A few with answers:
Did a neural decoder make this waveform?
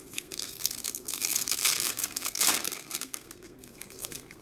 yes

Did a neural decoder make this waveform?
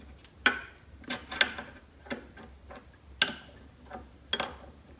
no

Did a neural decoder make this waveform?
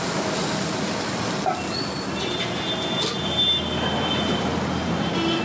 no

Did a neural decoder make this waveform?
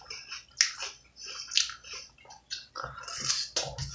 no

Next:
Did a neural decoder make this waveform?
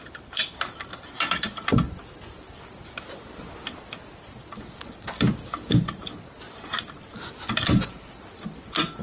no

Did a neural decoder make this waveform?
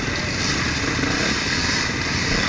no